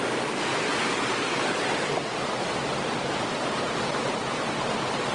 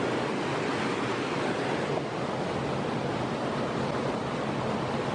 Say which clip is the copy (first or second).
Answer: first